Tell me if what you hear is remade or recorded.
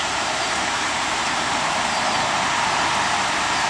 remade